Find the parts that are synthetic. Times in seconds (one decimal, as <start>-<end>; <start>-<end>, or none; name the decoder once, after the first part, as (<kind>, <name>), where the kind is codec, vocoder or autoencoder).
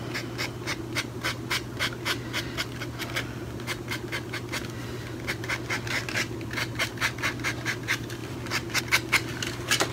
8.2-8.8 (vocoder, BigVGAN v2)